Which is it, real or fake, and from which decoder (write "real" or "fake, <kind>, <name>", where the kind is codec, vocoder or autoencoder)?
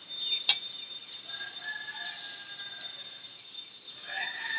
real